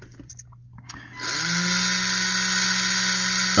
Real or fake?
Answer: real